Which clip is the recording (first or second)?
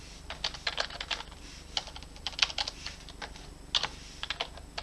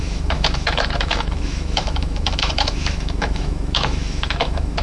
first